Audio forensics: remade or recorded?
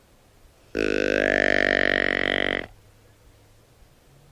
recorded